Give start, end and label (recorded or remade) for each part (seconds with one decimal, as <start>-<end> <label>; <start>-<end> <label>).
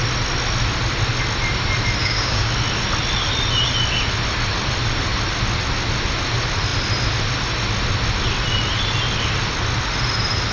0.0-2.0 recorded; 2.0-2.5 remade; 2.5-10.5 recorded